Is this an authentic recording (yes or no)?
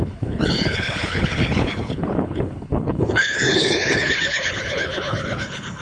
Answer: no